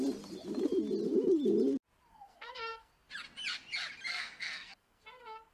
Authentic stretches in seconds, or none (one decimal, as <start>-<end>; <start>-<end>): 0.0-2.1; 2.9-4.1